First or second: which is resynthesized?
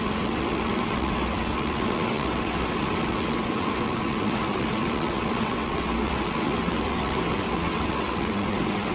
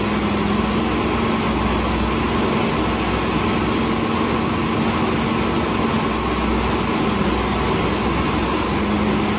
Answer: first